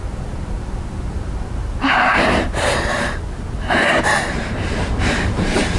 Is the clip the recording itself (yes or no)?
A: no